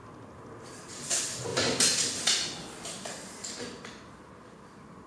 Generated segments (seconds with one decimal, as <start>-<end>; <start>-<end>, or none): none